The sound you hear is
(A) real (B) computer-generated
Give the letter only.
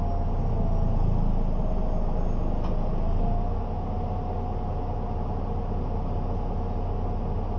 A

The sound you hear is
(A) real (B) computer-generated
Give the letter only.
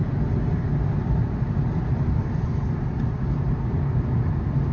A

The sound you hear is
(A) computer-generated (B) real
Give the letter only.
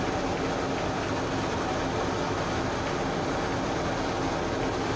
B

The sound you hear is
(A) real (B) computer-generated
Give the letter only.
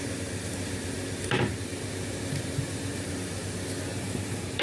B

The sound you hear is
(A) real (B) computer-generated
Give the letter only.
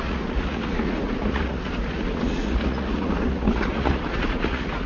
B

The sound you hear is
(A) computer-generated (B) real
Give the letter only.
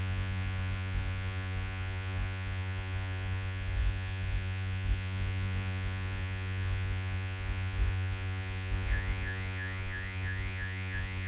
A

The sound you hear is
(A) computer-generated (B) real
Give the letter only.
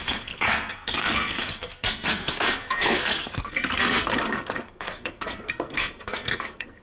A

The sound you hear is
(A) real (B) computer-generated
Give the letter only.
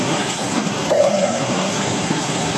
B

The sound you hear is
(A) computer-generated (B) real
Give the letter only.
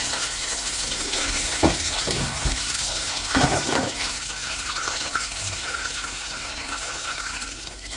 A